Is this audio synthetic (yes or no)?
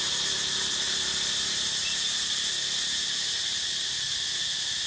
no